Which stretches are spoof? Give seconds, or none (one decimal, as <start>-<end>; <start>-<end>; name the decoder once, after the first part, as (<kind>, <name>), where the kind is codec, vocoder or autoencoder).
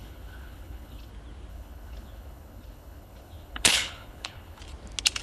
0.0-1.1 (codec, HILCodec); 1.5-4.6